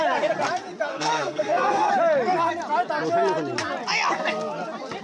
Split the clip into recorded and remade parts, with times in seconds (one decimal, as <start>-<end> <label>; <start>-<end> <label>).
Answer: 0.0-0.9 recorded; 0.9-1.9 remade; 1.9-5.0 recorded